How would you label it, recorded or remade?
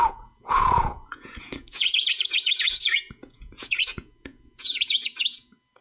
remade